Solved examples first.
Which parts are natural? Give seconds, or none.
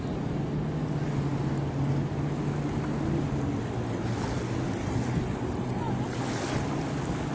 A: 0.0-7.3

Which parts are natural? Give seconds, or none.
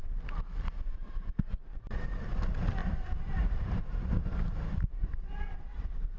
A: 0.0-2.8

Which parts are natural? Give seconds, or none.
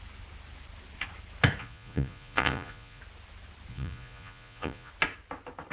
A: 0.0-1.6; 3.0-3.7; 4.9-5.7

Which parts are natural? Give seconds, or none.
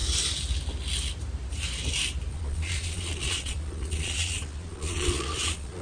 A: 0.0-2.3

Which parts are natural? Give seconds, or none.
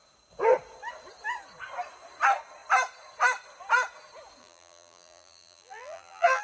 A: 0.0-4.4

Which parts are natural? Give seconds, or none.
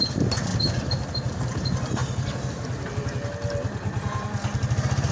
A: 0.0-5.1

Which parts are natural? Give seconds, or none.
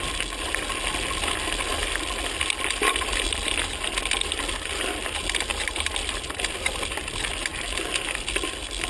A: 0.0-8.9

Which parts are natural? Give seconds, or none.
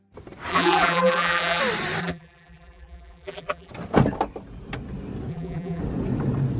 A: 0.0-0.5; 1.6-2.0; 3.7-5.3; 5.8-6.6